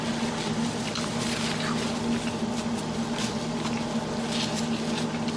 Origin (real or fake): real